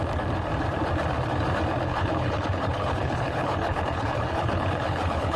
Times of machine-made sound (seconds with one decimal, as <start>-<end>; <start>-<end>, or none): 1.9-5.4